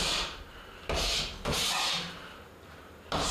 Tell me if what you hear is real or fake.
fake